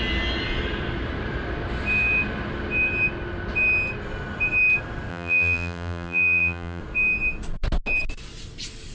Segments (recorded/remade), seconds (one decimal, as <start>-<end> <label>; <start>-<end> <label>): 0.0-5.1 recorded; 5.1-6.8 remade; 6.8-8.9 recorded